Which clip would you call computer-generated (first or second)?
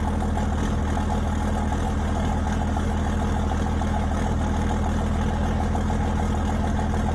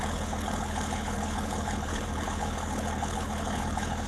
second